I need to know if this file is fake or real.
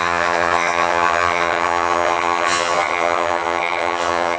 fake